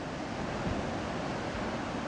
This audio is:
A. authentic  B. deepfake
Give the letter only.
A